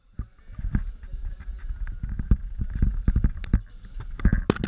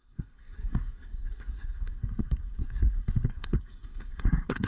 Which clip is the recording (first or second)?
first